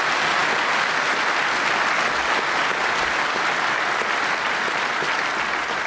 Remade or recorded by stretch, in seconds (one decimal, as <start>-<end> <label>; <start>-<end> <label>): 0.0-5.9 recorded